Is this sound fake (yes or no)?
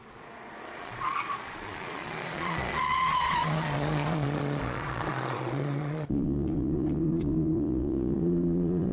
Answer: yes